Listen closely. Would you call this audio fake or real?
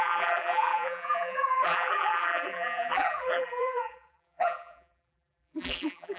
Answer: fake